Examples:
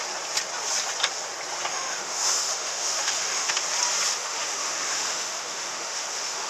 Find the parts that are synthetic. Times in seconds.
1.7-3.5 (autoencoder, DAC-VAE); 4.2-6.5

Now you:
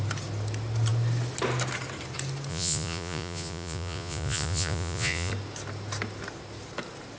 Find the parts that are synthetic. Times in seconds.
2.5-5.3 (vocoder, Vocos)

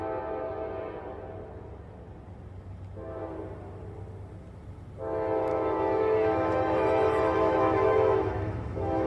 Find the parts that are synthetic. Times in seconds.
5.5-9.1 (autoencoder, DAC-VAE)

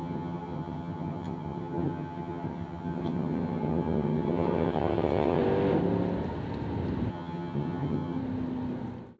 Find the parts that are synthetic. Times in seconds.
0.0-5.4 (vocoder, HiFi-GAN); 7.1-8.2